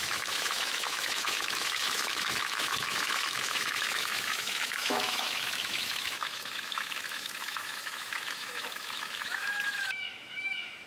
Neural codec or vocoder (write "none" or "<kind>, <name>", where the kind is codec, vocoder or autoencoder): autoencoder, DAC-VAE